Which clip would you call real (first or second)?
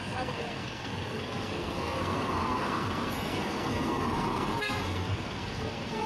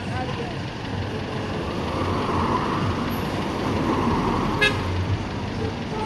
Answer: second